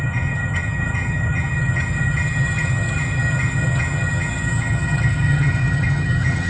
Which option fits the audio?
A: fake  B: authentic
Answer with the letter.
A